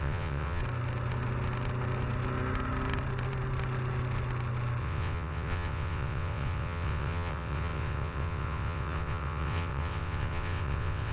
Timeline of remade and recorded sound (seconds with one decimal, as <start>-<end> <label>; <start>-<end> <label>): 0.0-0.6 remade; 0.6-4.8 recorded; 4.8-11.1 remade